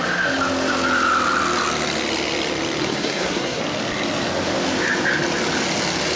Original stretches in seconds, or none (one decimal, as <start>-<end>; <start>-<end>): 0.0-2.8; 3.6-6.2